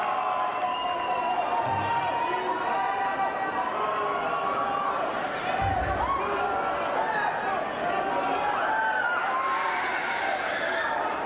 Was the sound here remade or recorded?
recorded